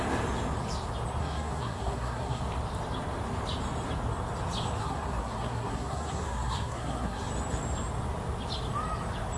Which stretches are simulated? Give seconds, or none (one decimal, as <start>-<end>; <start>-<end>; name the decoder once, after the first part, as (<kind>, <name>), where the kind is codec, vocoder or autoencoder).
1.2-2.4 (codec, SNAC); 4.8-7.3